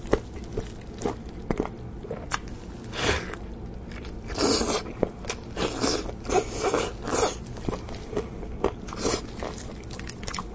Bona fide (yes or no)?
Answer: yes